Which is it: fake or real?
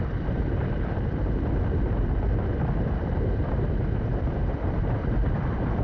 real